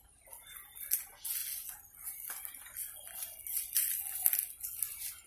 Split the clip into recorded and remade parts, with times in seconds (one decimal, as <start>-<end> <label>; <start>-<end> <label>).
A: 0.0-5.3 recorded